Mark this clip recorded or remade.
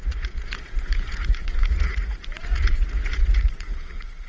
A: remade